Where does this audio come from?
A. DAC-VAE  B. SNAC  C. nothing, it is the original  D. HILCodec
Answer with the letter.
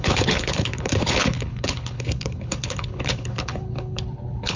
D